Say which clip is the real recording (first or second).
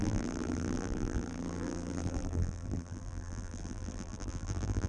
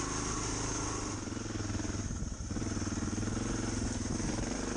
second